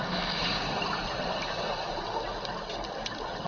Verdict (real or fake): real